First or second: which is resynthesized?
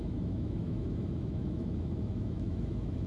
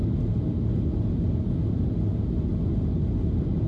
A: first